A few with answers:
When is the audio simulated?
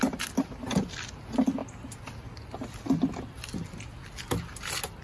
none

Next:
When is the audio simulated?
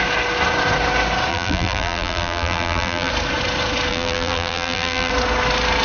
1.3-3.1 (vocoder, BigVGAN v2); 3.9-5.1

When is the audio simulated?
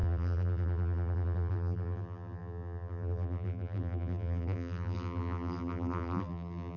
0.0-6.8 (vocoder, BigVGAN v2)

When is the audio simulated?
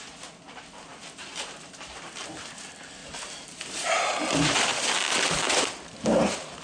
0.9-2.5 (vocoder, BigVGAN v2); 3.0-4.8